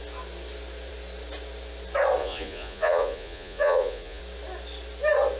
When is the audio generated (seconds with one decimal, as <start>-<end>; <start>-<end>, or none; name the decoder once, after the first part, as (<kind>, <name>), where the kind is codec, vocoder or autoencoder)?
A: 2.2-4.2 (vocoder, Vocos)